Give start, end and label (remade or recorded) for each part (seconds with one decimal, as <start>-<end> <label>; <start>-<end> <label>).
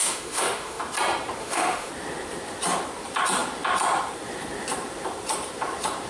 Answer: 0.0-0.8 remade; 0.8-1.4 recorded; 1.4-1.9 remade; 1.9-6.1 recorded